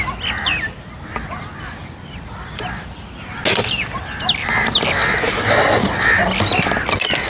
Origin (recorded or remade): recorded